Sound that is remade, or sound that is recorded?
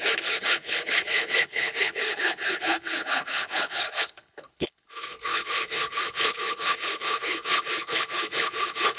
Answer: remade